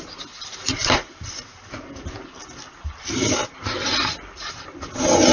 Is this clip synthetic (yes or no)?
no